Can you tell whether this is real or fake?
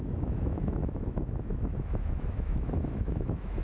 fake